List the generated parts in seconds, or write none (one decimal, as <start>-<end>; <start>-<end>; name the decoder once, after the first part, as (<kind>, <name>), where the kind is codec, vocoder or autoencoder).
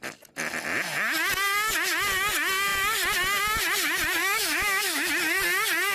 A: 4.2-5.1 (autoencoder, DAC-VAE)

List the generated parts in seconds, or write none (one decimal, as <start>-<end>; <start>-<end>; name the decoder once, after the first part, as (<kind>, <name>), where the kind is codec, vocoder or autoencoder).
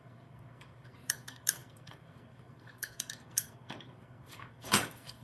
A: 0.0-5.2 (codec, SNAC)